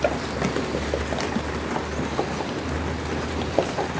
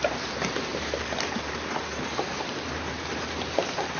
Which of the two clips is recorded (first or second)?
first